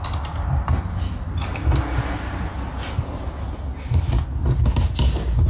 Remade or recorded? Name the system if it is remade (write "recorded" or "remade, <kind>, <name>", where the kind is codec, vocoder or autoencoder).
recorded